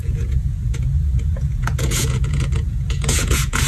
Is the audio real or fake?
fake